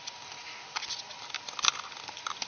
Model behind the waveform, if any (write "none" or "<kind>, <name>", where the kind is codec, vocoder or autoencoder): none